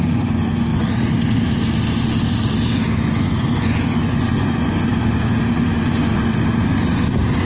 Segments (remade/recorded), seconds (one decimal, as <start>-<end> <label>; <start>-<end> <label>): 0.0-0.7 remade; 0.7-3.1 recorded; 3.1-4.9 remade; 4.9-5.5 recorded; 5.5-6.1 remade; 6.1-7.4 recorded